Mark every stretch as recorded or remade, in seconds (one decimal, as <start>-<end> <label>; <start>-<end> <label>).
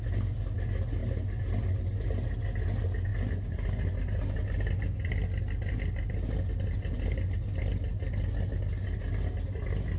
0.0-10.0 recorded